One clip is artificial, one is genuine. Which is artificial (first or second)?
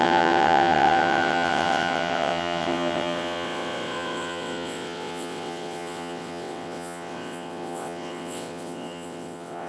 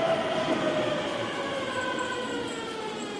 first